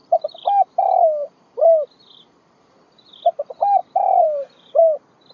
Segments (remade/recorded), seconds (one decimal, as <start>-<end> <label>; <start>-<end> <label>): 0.0-3.8 recorded; 3.8-4.8 remade; 4.8-5.3 recorded